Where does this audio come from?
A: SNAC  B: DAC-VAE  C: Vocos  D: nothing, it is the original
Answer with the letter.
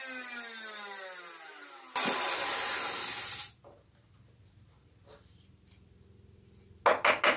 D